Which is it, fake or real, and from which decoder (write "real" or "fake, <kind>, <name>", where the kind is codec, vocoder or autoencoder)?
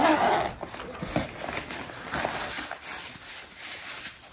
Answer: real